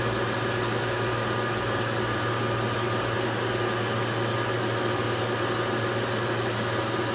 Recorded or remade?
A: recorded